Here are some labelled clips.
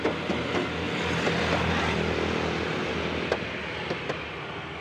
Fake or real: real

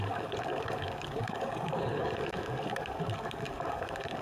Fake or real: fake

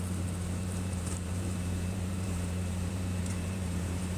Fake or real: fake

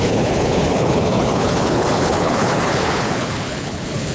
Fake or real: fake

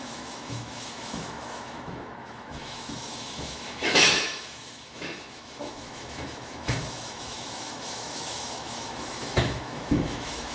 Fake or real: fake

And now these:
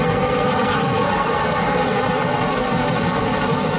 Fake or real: fake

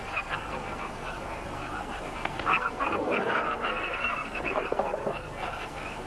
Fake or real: fake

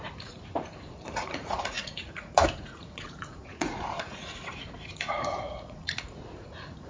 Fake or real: fake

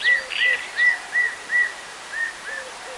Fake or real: real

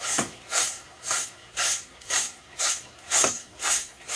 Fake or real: fake